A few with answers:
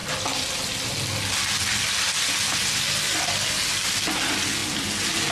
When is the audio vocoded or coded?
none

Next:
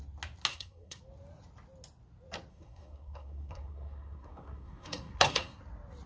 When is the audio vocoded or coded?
0.5-1.0 (codec, SNAC); 2.5-5.6